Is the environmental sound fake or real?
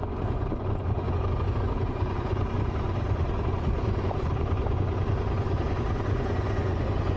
fake